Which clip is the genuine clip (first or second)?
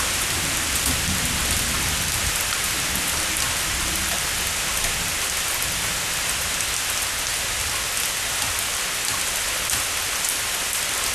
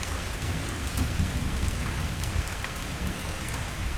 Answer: first